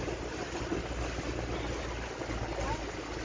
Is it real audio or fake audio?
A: real